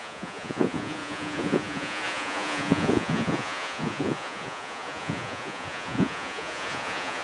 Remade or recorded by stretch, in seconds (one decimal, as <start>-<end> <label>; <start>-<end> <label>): 0.0-7.2 remade